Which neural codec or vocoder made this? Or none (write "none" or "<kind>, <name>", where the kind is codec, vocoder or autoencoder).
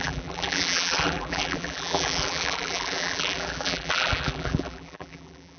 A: vocoder, BigVGAN v2